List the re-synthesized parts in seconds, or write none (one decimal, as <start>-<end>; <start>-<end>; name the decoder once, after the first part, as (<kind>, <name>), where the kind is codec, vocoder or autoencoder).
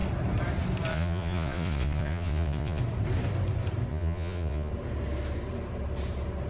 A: 0.9-2.8 (vocoder, Vocos); 3.9-4.7